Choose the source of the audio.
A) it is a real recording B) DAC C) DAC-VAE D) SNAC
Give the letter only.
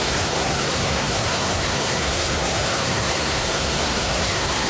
D